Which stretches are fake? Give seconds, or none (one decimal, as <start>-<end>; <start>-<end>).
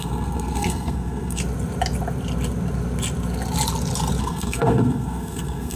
0.0-1.4; 4.2-5.8